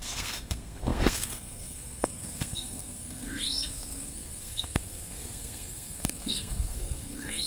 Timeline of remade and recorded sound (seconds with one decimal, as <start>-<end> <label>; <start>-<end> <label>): 0.0-7.5 remade